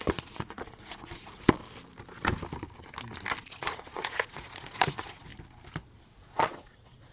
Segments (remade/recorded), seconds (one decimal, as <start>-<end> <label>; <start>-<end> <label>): 0.0-1.6 remade; 1.6-3.4 recorded; 3.4-5.3 remade; 5.3-6.1 recorded; 6.1-7.1 remade